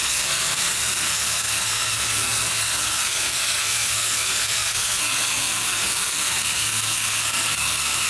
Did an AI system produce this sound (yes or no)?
yes